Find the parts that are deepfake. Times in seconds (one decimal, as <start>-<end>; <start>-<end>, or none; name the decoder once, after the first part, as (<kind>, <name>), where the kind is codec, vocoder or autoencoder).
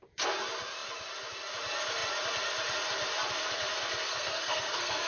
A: 4.1-5.1 (codec, SNAC)